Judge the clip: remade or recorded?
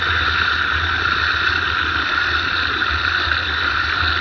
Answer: recorded